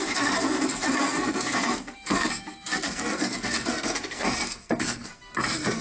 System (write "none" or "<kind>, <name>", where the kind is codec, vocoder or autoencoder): codec, SNAC